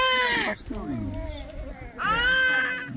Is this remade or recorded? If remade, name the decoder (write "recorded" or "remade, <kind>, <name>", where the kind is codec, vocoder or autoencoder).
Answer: recorded